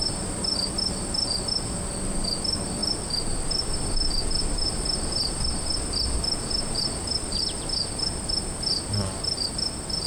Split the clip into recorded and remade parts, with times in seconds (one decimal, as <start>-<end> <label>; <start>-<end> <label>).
0.0-10.1 recorded